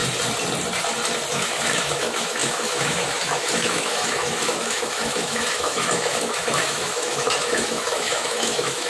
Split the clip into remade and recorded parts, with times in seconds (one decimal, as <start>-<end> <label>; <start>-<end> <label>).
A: 0.0-1.3 recorded; 1.3-8.9 remade